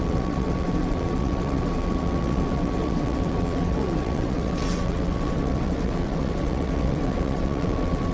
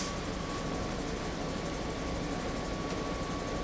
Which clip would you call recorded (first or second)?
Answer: second